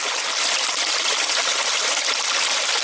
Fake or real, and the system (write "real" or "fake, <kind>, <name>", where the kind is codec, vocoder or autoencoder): real